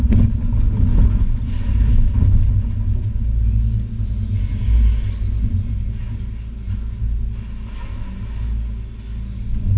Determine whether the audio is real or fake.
real